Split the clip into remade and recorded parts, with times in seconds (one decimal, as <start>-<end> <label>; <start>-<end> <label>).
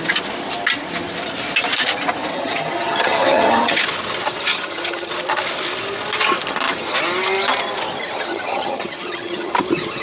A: 0.0-2.3 recorded; 2.3-3.8 remade; 3.8-4.5 recorded; 4.5-5.1 remade; 5.1-8.3 recorded; 8.3-9.5 remade; 9.5-10.0 recorded